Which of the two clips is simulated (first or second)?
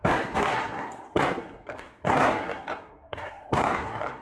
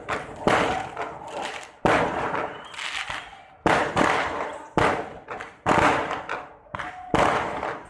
first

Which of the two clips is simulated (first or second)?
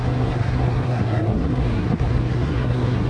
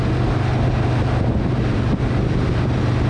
first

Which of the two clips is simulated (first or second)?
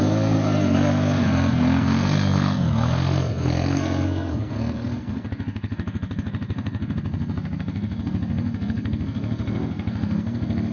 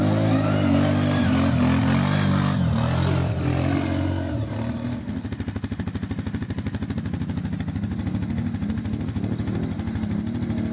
first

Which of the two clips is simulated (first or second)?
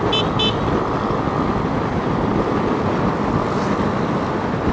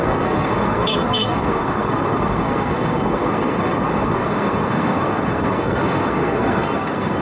second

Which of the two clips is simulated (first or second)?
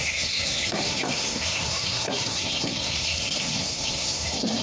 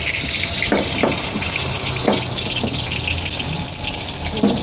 first